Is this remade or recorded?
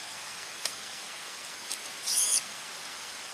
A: remade